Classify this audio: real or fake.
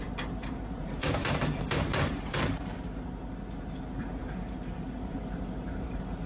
fake